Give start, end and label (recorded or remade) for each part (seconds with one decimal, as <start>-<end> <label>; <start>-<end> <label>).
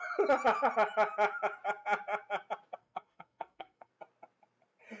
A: 0.0-2.8 recorded; 2.8-3.9 remade; 3.9-5.0 recorded